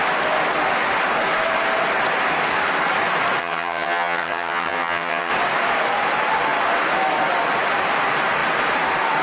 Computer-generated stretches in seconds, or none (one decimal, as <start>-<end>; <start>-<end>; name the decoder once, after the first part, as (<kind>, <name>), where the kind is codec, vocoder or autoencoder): 3.4-5.3 (vocoder, HiFi-GAN)